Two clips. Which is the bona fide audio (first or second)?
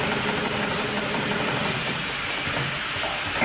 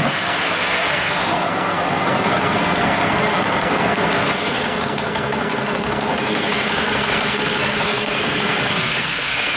first